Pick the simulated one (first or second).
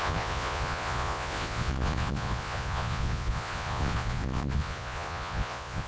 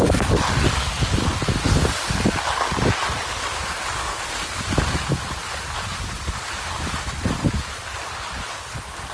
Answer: first